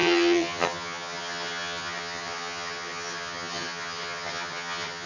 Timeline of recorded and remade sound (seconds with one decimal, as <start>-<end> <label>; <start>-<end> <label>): 0.0-5.1 remade